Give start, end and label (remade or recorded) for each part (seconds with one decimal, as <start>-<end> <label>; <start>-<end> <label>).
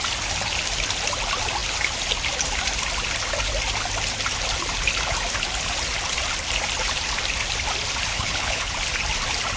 0.0-8.1 recorded; 8.1-8.7 remade; 8.7-9.6 recorded